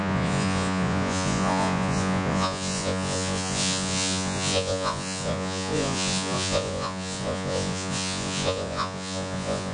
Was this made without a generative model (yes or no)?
no